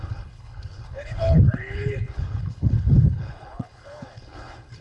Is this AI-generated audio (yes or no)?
yes